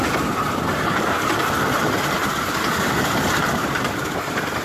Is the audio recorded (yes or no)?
yes